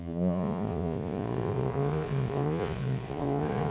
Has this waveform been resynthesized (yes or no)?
yes